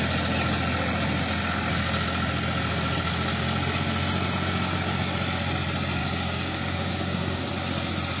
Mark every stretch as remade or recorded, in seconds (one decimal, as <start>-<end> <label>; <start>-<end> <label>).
0.0-6.0 recorded; 6.0-7.5 remade; 7.5-8.2 recorded